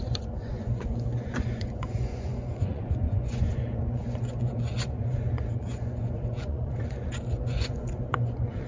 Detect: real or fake fake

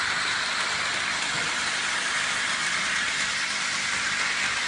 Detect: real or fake real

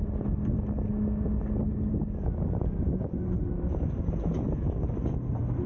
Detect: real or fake real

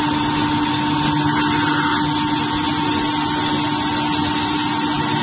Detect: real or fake real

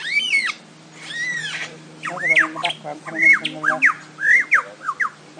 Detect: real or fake real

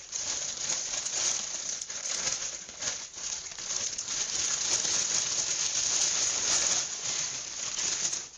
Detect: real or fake fake